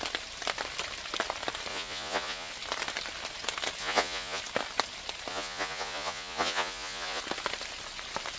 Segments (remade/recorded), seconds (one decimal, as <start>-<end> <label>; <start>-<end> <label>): 0.0-1.7 recorded; 1.7-2.5 remade; 2.5-3.8 recorded; 3.8-4.4 remade; 4.4-5.3 recorded; 5.3-7.2 remade; 7.2-8.4 recorded